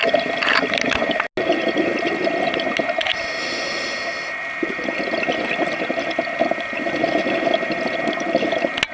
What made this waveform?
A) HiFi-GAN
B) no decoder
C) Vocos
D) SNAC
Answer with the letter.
B